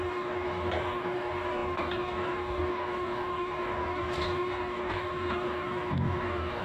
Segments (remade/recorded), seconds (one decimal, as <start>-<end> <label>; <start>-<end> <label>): 0.0-6.6 remade